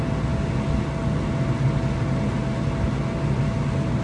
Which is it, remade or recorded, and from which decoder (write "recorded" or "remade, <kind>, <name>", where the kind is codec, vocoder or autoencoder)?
recorded